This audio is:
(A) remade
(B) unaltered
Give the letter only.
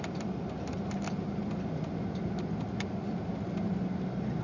B